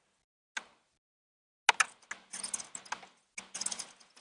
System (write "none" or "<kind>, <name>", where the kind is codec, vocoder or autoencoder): none